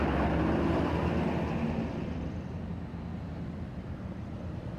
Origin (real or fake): real